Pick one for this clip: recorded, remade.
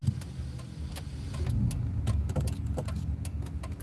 recorded